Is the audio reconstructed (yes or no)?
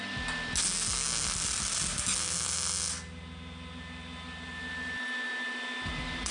no